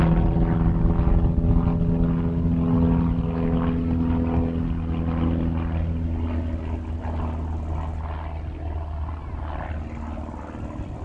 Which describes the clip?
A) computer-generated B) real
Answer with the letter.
B